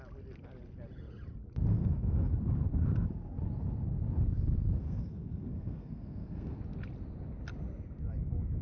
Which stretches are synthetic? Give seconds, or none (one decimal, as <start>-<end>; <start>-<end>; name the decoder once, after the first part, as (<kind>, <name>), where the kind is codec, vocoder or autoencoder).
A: 1.7-2.3 (codec, SNAC); 4.8-6.6